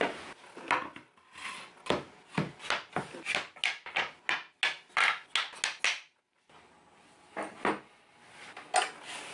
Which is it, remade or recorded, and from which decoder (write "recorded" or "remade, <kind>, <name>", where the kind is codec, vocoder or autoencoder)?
recorded